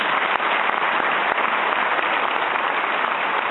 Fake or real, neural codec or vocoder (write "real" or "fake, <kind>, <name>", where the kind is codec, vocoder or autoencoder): real